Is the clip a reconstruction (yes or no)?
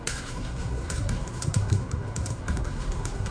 yes